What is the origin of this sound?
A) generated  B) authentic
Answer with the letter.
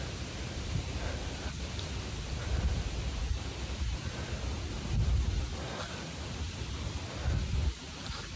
B